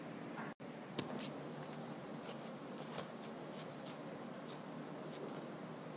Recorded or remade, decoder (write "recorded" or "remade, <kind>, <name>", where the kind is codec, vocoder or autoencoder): recorded